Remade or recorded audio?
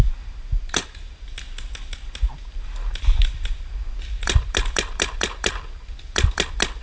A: recorded